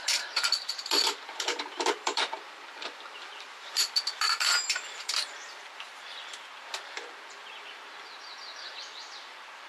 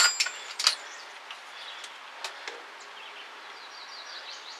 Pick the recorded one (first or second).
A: second